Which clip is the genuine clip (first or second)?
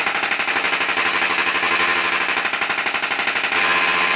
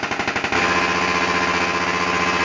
second